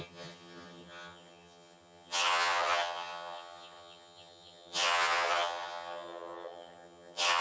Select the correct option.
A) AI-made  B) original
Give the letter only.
A